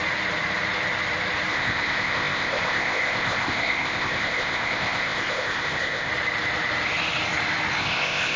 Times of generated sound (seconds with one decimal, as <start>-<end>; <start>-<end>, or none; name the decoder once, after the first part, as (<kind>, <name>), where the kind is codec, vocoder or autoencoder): 1.5-6.1 (codec, ZipCodec); 7.8-8.4